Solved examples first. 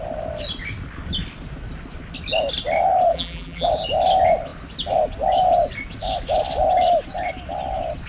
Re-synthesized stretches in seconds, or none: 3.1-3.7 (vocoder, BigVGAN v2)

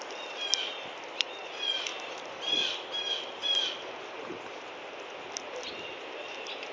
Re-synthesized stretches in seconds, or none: none

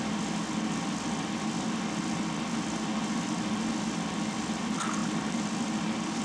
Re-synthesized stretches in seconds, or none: 5.0-6.2 (vocoder, BigVGAN v2)

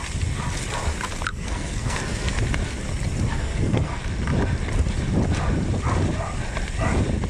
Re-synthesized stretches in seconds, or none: 1.3-2.4 (codec, SNAC); 3.3-4.0

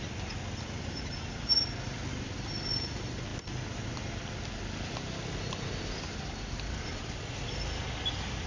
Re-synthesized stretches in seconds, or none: none

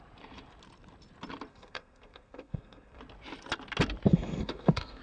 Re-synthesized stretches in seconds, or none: 1.5-3.0 (codec, SNAC); 4.1-5.0